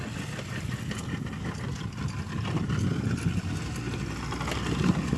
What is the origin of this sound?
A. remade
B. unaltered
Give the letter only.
B